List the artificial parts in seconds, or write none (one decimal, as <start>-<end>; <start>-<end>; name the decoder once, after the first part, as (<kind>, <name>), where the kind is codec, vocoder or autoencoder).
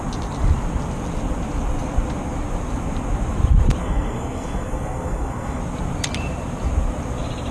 3.8-5.6 (codec, SNAC)